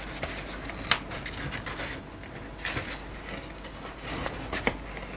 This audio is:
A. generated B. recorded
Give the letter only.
B